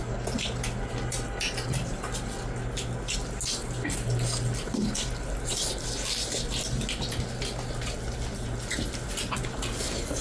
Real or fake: real